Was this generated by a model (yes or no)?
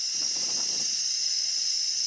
yes